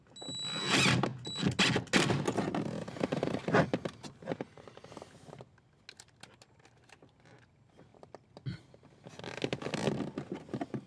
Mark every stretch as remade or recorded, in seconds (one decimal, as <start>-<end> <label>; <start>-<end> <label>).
0.0-10.9 recorded